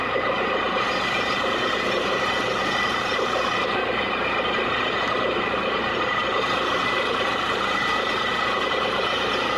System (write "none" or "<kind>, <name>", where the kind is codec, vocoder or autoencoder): vocoder, BigVGAN v2